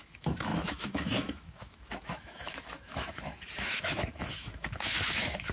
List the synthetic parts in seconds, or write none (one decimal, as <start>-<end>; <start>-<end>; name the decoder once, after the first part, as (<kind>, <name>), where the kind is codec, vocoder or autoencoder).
0.0-5.5 (autoencoder, DAC-VAE)